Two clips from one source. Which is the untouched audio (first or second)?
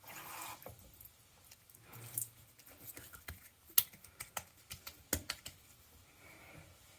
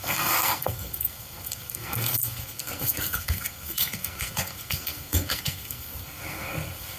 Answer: first